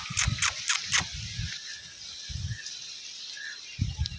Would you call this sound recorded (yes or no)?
yes